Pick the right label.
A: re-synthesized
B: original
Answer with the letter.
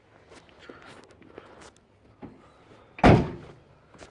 B